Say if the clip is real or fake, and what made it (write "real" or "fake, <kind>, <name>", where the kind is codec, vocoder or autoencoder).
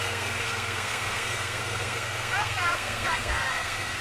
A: fake, codec, SNAC